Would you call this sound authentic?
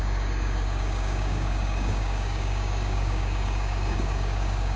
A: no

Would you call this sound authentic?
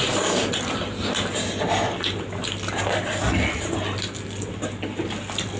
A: yes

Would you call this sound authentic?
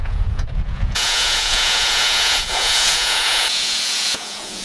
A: no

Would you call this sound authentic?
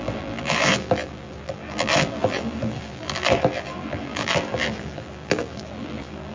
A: no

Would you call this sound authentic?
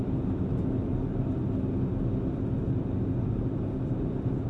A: yes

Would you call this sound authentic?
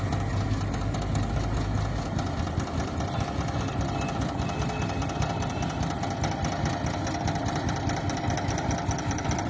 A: yes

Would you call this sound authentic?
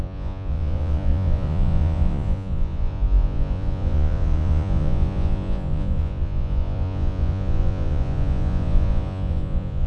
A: no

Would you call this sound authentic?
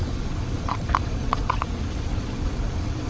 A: no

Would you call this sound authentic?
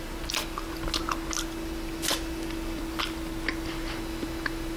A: yes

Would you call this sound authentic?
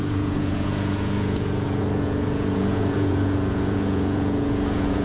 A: no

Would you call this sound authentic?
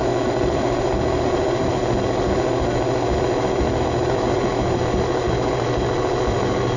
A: yes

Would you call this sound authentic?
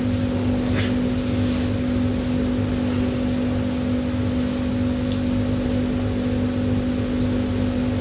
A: yes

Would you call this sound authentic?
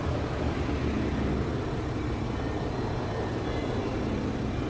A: yes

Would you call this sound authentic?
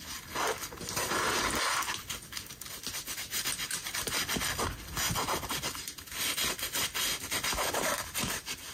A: yes